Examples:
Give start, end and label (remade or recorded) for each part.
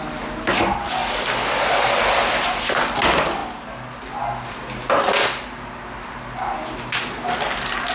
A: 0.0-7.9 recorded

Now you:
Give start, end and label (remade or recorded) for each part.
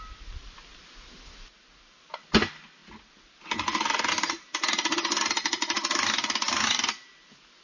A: 0.0-7.6 recorded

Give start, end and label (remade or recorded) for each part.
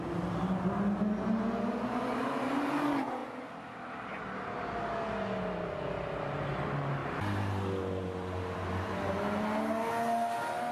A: 0.0-10.7 recorded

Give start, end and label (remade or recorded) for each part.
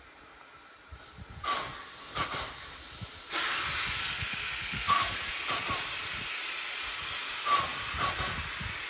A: 0.0-4.0 recorded; 4.0-5.3 remade; 5.3-8.9 recorded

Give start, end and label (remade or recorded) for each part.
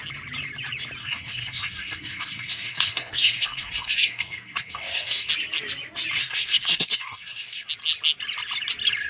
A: 0.0-1.0 recorded; 1.0-5.3 remade; 5.3-6.2 recorded; 6.2-7.7 remade; 7.7-9.1 recorded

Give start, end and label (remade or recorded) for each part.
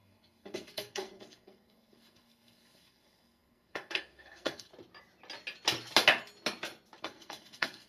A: 0.0-4.7 remade; 4.7-7.0 recorded; 7.0-7.9 remade